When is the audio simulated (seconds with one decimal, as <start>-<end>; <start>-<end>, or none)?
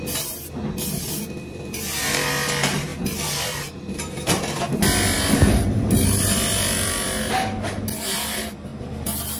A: 2.9-6.9